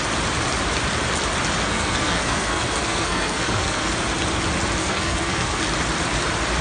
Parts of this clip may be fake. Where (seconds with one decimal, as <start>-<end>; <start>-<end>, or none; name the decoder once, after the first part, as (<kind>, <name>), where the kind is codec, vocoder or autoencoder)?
1.6-3.9 (codec, SNAC); 4.8-5.6